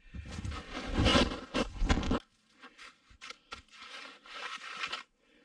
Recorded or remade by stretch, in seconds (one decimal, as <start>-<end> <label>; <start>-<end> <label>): 0.0-5.4 recorded